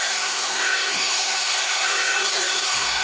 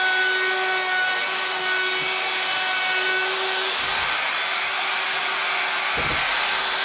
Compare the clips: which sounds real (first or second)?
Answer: second